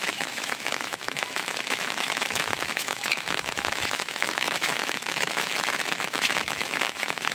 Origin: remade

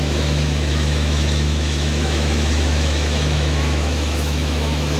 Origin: remade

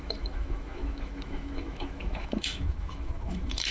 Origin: remade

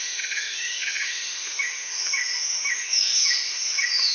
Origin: remade